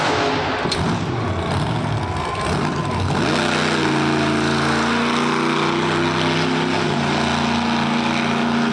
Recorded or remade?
recorded